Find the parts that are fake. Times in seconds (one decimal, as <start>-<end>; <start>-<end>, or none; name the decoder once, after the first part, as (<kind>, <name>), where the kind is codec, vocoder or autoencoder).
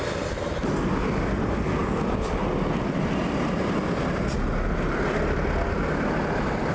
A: none